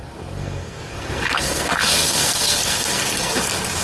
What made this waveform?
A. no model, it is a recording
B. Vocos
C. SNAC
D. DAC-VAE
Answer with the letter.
C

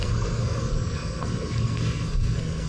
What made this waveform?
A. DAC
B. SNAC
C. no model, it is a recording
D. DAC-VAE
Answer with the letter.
B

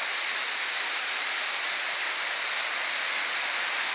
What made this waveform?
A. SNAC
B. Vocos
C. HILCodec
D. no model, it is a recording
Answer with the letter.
D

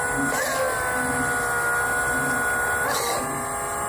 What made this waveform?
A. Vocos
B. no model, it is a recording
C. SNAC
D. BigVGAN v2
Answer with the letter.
B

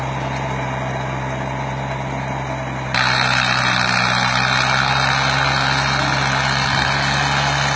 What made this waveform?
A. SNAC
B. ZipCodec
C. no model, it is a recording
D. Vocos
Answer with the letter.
C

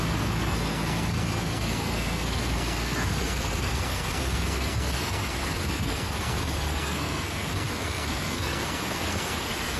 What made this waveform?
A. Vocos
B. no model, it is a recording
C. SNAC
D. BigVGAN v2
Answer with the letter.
C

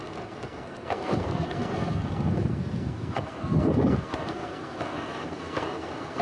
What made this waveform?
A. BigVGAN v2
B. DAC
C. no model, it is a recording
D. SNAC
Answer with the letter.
D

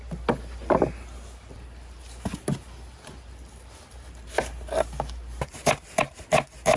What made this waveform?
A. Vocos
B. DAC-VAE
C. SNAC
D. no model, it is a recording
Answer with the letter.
D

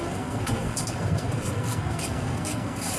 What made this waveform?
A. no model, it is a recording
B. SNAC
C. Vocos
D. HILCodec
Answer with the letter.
B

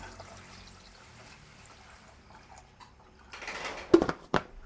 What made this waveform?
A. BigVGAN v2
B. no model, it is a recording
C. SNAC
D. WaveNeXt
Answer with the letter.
B